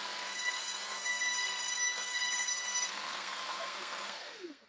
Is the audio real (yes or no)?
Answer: no